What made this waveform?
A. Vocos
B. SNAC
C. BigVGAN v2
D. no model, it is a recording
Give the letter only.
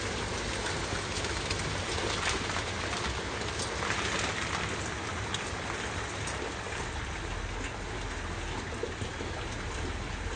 D